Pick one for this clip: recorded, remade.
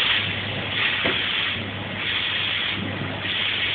recorded